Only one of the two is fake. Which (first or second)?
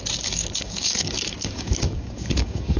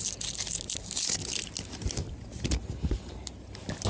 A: first